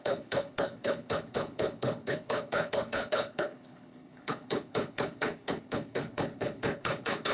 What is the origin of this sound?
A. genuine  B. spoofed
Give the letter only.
B